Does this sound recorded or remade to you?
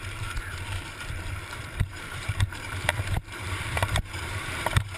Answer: remade